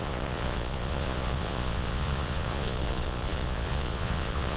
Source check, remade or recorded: remade